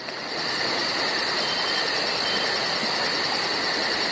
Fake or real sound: real